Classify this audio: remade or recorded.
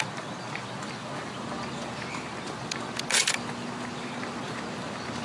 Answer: recorded